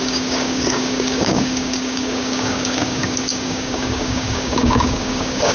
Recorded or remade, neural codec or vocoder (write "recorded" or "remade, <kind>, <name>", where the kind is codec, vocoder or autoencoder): remade, codec, DAC